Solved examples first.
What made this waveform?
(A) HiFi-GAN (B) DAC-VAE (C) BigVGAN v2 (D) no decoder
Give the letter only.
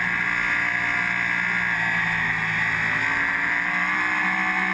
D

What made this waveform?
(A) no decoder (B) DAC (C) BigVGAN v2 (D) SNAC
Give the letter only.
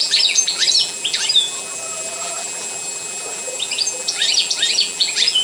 C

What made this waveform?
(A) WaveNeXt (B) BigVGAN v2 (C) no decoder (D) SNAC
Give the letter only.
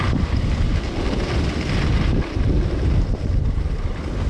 C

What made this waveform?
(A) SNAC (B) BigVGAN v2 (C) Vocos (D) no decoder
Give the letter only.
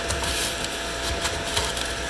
D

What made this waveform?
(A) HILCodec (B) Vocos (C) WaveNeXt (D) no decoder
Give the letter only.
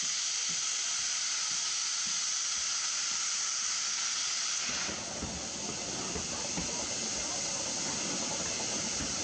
D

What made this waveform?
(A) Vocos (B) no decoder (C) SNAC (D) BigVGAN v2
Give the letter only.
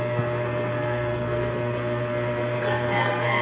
C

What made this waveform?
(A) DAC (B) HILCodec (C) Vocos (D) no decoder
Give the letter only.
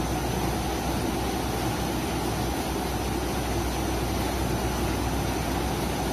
D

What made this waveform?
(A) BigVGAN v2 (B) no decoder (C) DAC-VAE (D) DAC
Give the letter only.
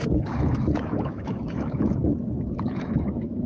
C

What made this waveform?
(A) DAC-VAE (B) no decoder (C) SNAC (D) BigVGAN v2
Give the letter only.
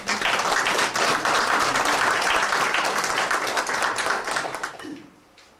B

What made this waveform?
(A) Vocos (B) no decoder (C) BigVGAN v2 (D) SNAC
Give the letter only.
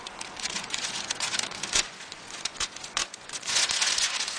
A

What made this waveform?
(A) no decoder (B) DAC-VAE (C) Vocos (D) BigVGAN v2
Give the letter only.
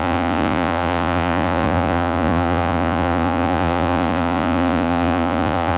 C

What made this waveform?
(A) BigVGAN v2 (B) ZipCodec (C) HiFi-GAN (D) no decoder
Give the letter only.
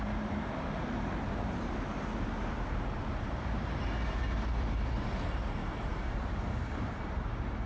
A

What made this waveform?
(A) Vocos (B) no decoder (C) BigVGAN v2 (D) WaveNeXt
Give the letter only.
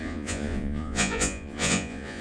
A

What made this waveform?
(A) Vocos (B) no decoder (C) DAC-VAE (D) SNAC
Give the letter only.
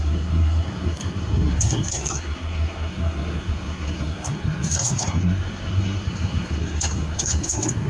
D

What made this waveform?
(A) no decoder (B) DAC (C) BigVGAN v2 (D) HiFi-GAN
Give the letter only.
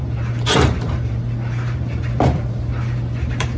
C